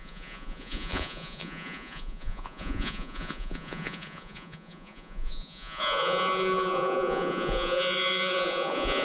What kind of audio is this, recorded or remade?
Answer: remade